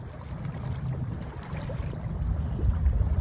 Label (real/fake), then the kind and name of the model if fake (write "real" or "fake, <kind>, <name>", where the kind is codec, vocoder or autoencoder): real